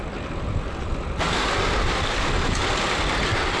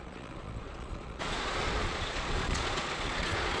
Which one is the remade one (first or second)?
second